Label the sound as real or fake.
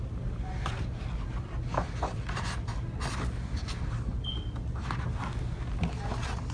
real